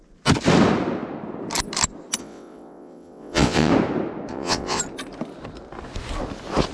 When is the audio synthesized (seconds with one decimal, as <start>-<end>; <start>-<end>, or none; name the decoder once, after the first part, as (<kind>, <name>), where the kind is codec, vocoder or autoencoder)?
2.2-3.7 (vocoder, WaveNeXt); 4.3-4.8